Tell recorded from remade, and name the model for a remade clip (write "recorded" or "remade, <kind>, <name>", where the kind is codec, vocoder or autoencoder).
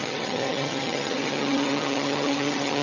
remade, vocoder, HiFi-GAN